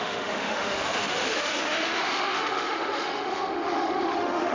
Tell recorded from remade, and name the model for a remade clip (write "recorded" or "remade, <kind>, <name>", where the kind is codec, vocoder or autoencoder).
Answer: remade, autoencoder, DAC-VAE